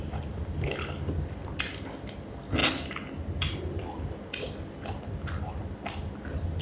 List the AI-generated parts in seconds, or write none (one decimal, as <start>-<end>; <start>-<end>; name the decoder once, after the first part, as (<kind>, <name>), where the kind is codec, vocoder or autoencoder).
none